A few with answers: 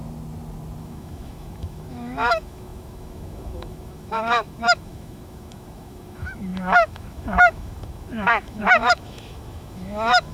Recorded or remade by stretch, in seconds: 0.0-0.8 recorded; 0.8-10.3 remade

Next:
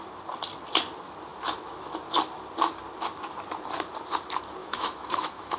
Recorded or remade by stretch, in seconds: 0.0-4.6 recorded; 4.6-5.6 remade

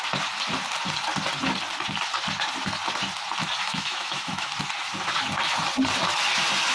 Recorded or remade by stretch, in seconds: 0.0-3.6 recorded; 3.6-4.5 remade; 4.5-6.7 recorded

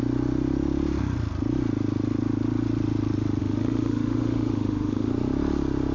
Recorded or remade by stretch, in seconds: 0.0-3.4 recorded; 3.4-5.1 remade; 5.1-5.9 recorded

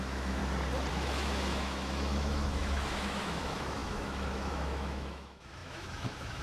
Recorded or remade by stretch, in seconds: 0.0-0.4 remade; 0.4-0.9 recorded; 0.9-6.4 remade

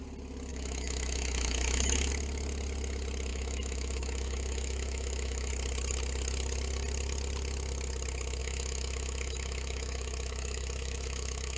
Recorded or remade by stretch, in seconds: 0.0-0.5 recorded; 0.5-2.1 remade; 2.1-3.3 recorded; 3.3-5.5 remade; 5.5-8.4 recorded; 8.4-11.6 remade

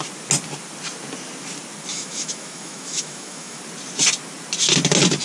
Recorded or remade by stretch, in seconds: 0.0-1.9 recorded; 1.9-3.6 remade; 3.6-5.2 recorded